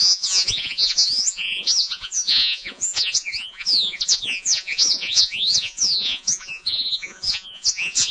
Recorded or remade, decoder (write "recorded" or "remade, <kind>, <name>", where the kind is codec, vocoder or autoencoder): remade, vocoder, Vocos